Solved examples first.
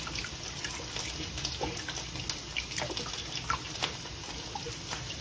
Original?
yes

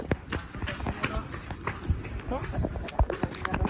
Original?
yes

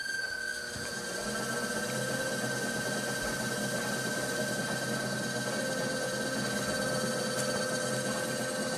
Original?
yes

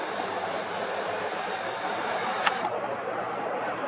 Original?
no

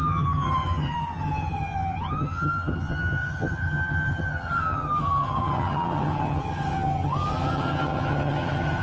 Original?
no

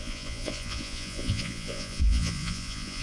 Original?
no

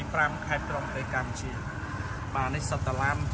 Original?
yes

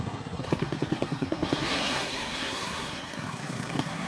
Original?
no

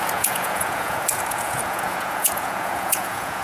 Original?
no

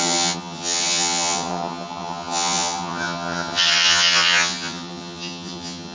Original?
no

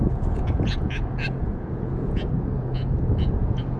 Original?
no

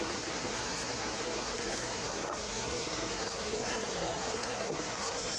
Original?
no